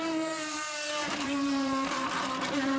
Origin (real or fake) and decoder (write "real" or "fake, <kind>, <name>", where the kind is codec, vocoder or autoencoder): fake, vocoder, BigVGAN v2